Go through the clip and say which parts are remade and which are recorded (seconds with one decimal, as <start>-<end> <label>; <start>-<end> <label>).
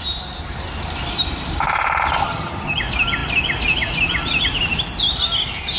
0.0-2.2 recorded; 2.2-2.8 remade; 2.8-5.8 recorded